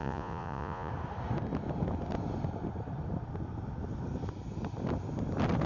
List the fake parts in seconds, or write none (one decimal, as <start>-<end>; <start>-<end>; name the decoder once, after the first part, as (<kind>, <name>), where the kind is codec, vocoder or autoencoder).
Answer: 0.0-0.9 (vocoder, Vocos)